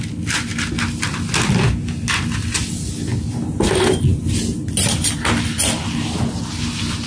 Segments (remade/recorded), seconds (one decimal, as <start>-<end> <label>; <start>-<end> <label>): 0.0-7.1 recorded